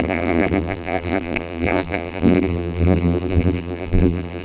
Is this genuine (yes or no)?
no